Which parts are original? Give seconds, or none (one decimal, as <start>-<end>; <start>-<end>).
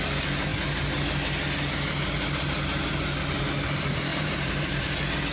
0.0-4.1; 4.8-5.3